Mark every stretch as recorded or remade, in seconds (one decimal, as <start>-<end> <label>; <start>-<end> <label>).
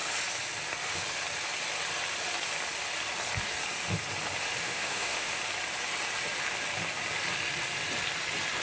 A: 0.0-4.6 recorded; 4.6-5.4 remade; 5.4-8.6 recorded